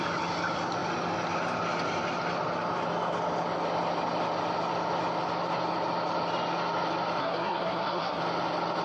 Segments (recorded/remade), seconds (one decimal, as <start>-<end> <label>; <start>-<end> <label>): 0.0-7.2 recorded; 7.2-8.2 remade; 8.2-8.8 recorded